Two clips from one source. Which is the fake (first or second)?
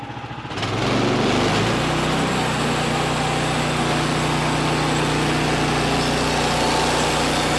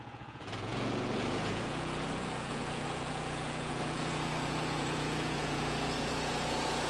second